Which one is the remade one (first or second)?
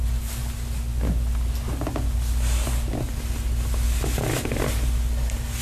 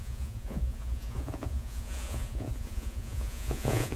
second